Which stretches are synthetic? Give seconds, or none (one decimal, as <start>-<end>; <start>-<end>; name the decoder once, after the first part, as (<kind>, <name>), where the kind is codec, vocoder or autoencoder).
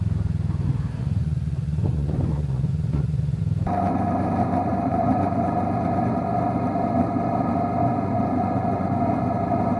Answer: 1.0-3.4 (vocoder, Vocos); 4.7-5.2; 7.8-9.2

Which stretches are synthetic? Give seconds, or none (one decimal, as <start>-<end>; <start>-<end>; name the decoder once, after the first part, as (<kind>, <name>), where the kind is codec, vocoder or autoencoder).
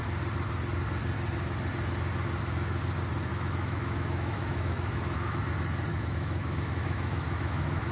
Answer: 3.3-5.4 (autoencoder, DAC-VAE); 5.9-7.9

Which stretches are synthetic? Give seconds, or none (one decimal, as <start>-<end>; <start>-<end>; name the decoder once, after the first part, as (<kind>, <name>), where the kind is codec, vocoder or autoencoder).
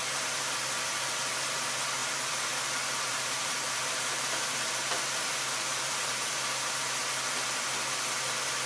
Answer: 0.0-0.6 (vocoder, BigVGAN v2); 2.0-6.3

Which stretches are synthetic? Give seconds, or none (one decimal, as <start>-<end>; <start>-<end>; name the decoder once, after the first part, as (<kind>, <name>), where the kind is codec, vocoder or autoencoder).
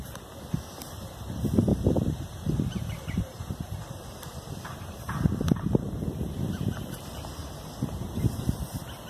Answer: 1.7-5.9 (vocoder, BigVGAN v2); 7.4-8.6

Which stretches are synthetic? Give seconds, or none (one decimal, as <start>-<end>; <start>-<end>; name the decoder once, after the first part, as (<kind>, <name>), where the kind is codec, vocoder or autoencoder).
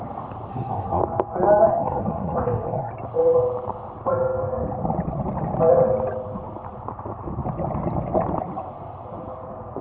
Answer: 0.5-1.0 (codec, SNAC); 1.7-2.9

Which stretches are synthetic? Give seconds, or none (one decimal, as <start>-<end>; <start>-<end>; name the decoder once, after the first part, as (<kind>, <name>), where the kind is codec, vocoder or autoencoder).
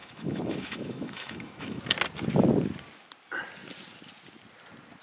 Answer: 0.0-1.8 (autoencoder, DAC-VAE)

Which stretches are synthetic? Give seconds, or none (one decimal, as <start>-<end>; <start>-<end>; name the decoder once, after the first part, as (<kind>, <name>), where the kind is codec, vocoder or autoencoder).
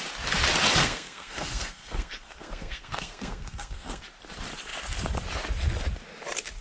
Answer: 0.8-4.0 (codec, SNAC)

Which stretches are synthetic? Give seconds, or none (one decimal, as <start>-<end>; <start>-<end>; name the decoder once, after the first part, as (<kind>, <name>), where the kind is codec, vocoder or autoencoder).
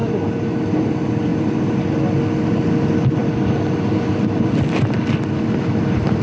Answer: none